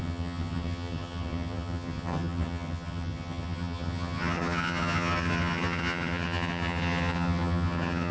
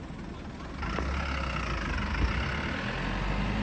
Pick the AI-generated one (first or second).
first